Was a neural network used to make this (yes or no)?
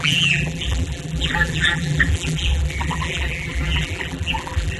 yes